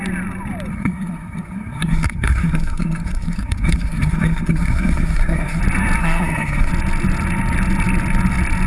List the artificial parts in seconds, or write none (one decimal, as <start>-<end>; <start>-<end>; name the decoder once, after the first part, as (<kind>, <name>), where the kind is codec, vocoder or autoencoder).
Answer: 0.7-5.6 (codec, SNAC); 6.0-6.7